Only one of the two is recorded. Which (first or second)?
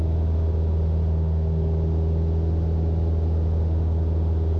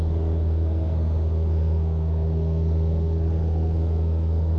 first